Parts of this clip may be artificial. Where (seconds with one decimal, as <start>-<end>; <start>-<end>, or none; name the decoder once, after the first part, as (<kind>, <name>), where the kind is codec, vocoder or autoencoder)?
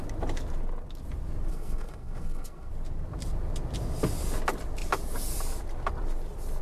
1.5-2.7 (codec, SNAC)